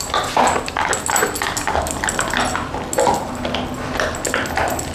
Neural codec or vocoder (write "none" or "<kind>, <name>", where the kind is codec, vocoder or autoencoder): none